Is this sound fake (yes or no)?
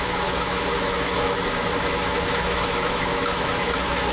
yes